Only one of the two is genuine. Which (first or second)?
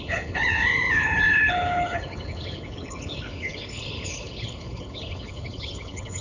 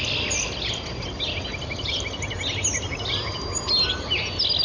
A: second